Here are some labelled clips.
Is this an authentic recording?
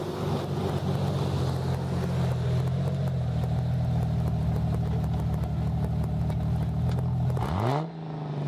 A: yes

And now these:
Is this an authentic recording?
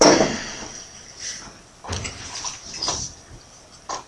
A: yes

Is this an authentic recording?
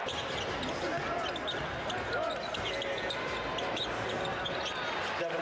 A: yes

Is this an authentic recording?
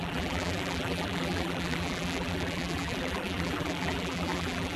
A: no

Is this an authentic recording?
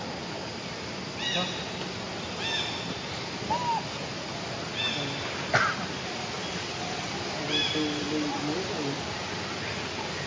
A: yes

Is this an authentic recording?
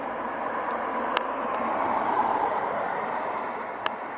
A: no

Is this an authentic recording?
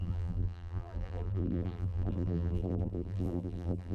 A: no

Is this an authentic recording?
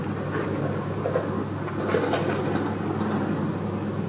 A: yes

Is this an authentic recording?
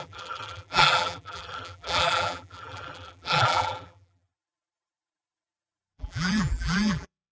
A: no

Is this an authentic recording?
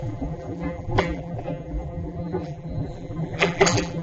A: no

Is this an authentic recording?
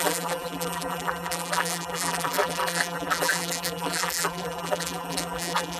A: no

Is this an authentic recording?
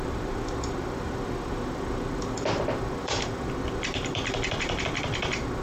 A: no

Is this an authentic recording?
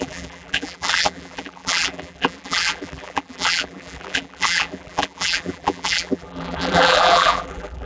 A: no